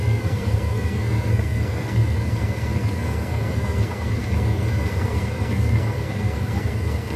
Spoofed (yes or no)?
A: yes